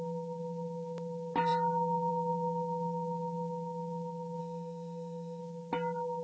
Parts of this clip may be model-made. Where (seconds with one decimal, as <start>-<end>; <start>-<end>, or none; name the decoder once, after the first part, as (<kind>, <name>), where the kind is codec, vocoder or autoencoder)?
4.4-5.4 (codec, SNAC)